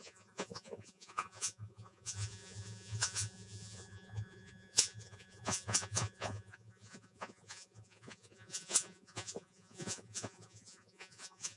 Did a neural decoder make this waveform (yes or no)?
yes